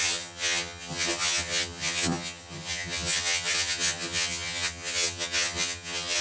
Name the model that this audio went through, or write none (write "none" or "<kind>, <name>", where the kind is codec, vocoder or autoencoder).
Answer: vocoder, HiFi-GAN